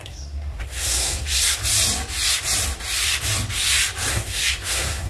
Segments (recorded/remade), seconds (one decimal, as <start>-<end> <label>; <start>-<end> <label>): 0.0-1.6 remade; 1.6-4.1 recorded; 4.1-5.1 remade